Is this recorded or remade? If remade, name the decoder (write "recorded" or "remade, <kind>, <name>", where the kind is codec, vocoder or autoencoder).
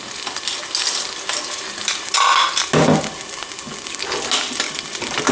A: recorded